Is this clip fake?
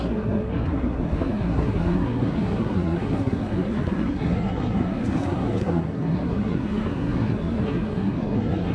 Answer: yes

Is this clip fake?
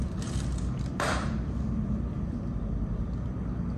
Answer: yes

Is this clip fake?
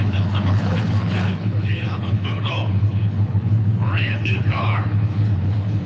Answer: yes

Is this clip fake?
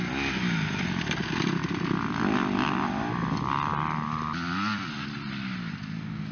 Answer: no